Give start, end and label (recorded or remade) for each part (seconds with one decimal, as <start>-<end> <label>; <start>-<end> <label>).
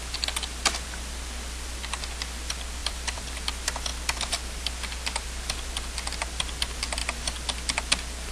0.0-2.8 recorded; 2.8-3.5 remade; 3.5-8.3 recorded